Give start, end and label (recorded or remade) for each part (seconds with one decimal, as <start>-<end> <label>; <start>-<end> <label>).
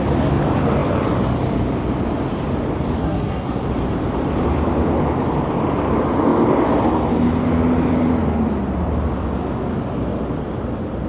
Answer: 0.0-3.0 recorded; 3.0-3.6 remade; 3.6-11.1 recorded